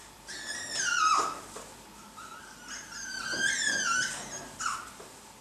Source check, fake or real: real